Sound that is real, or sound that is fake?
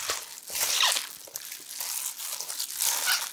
real